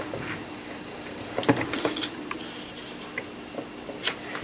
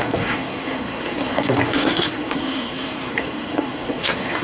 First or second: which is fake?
second